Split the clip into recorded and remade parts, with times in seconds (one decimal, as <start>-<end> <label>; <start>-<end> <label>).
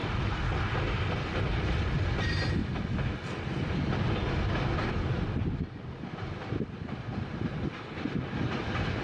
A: 0.0-9.0 recorded